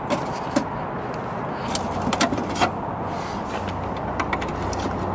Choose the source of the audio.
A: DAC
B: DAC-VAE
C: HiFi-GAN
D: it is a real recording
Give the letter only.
D